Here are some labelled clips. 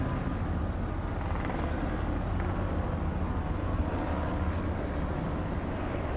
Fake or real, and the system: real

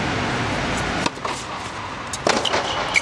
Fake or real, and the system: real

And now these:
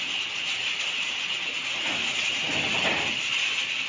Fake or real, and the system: real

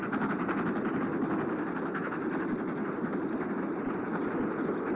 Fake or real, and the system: real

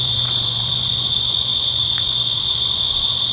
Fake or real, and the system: fake, vocoder, Vocos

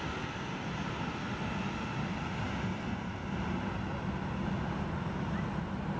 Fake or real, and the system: real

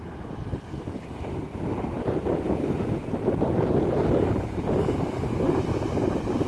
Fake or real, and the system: real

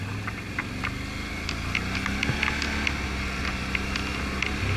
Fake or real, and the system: real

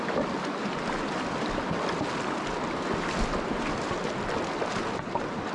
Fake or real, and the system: real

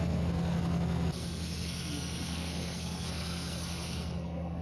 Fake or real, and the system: fake, codec, SNAC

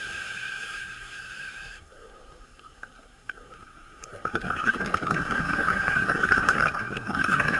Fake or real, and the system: fake, codec, SNAC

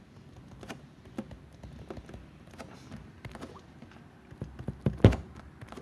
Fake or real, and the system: real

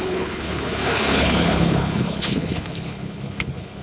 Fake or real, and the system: fake, codec, HILCodec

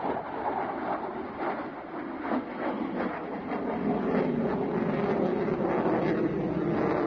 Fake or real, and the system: real